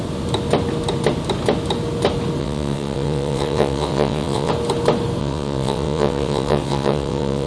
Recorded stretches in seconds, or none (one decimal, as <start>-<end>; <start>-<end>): 0.0-2.4; 4.5-5.2